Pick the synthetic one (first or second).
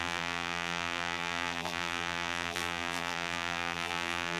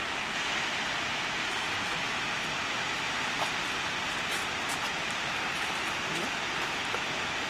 first